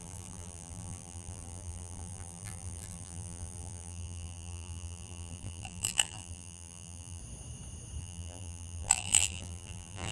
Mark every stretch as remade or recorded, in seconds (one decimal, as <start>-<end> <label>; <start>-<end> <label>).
0.0-7.2 remade; 7.2-8.0 recorded; 8.0-10.1 remade